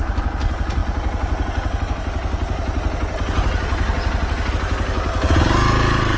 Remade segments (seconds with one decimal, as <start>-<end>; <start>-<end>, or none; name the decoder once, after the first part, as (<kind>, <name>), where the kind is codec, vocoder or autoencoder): none